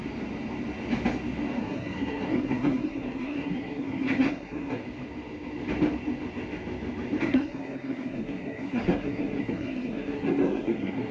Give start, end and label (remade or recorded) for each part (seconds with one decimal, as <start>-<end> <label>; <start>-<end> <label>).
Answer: 0.0-1.6 recorded; 1.6-4.8 remade; 4.8-7.2 recorded; 7.2-11.1 remade